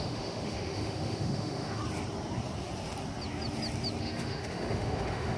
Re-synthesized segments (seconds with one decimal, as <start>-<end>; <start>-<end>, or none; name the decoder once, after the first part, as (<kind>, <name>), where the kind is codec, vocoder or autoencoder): 0.0-1.8 (autoencoder, DAC-VAE); 4.0-5.4